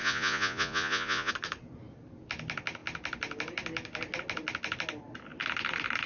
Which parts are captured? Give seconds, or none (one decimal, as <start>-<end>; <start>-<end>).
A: 1.3-6.1